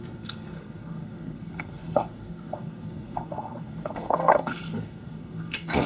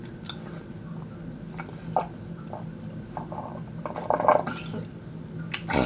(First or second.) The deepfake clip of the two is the first